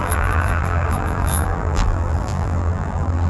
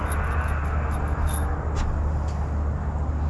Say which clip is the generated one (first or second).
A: first